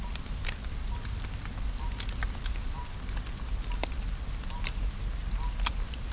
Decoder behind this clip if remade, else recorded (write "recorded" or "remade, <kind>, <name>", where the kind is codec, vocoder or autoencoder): recorded